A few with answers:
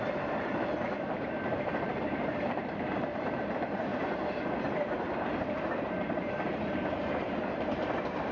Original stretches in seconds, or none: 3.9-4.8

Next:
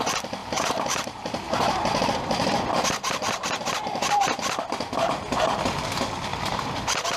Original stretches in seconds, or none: 0.0-0.4; 4.6-6.3; 6.8-7.2